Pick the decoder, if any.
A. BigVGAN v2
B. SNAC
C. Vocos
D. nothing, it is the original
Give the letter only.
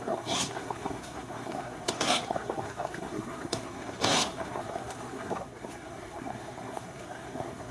B